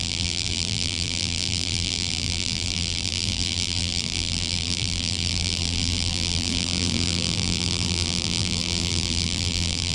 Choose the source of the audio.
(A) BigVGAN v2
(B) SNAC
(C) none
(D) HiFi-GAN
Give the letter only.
A